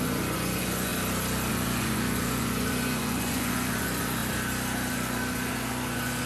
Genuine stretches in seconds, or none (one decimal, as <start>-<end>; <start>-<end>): 0.9-1.5; 4.2-4.9